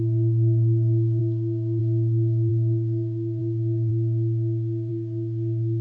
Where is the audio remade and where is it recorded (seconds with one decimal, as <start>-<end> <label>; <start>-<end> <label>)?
0.0-1.2 remade; 1.2-1.8 recorded; 1.8-3.9 remade; 3.9-4.9 recorded; 4.9-5.8 remade